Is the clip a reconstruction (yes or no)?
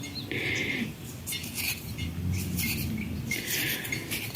no